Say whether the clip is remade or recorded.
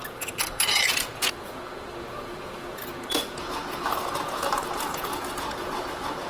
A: remade